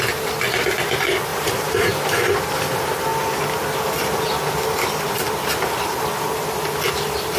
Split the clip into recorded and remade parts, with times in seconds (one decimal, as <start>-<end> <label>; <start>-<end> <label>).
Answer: 0.0-1.3 recorded; 1.3-1.9 remade; 1.9-7.4 recorded